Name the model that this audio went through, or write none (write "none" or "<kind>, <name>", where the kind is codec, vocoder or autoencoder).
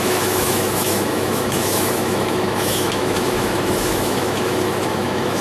autoencoder, DAC-VAE